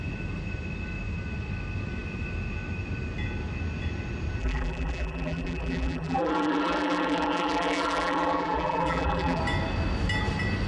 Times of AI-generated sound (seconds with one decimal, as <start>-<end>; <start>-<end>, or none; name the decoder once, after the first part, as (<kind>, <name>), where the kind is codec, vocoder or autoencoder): 4.4-9.4 (vocoder, BigVGAN v2)